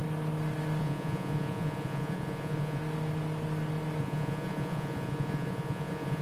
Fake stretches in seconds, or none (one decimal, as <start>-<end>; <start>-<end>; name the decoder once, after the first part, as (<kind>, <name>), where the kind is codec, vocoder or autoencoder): 0.8-2.8 (vocoder, Vocos); 4.0-6.2